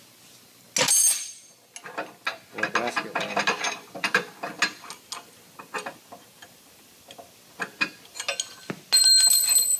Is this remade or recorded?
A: recorded